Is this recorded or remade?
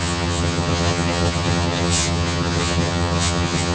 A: remade